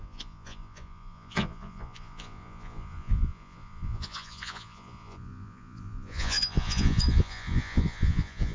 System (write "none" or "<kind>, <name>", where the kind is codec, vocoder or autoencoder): vocoder, Vocos